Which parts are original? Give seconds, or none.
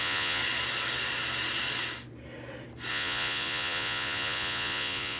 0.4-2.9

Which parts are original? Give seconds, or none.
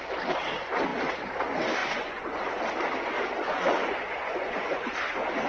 0.0-1.8; 2.6-3.4; 4.9-5.5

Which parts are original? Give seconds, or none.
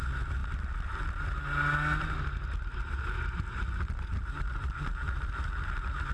0.0-6.1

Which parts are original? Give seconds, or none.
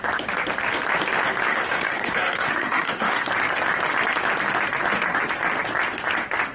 0.0-1.5; 3.3-6.5